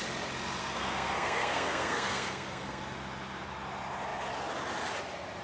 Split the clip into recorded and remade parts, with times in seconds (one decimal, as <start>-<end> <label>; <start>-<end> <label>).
0.0-0.6 recorded; 0.6-2.8 remade; 2.8-5.4 recorded

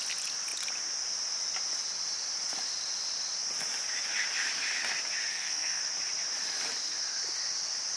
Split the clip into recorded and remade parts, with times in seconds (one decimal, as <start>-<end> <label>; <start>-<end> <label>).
0.0-5.3 recorded; 5.3-5.8 remade; 5.8-8.0 recorded